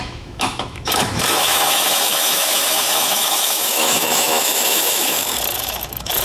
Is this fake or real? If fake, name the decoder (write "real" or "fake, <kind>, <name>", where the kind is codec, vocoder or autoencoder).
fake, autoencoder, DAC-VAE